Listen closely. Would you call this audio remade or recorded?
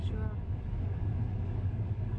remade